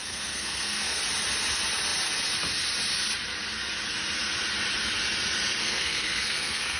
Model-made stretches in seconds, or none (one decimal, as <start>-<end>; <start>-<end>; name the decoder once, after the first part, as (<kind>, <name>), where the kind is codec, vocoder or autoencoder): 0.0-1.0 (codec, SNAC); 5.6-6.8